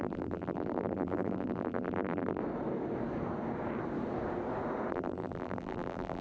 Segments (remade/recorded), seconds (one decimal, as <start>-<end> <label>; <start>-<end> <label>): 0.0-2.4 remade; 2.4-4.9 recorded; 4.9-6.2 remade